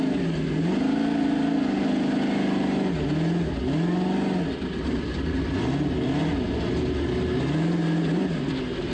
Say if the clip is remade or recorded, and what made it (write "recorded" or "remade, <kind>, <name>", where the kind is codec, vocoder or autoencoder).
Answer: recorded